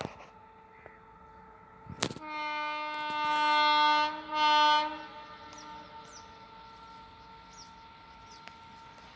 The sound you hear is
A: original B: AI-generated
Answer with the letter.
A